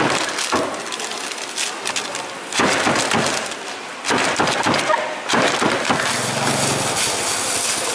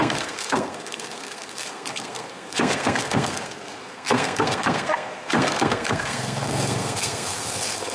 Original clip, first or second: first